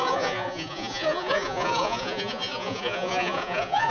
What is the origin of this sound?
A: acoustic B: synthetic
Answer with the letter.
B